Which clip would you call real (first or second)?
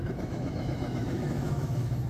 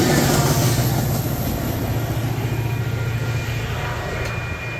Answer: second